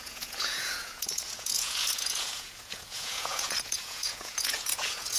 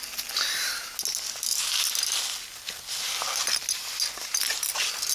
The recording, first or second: second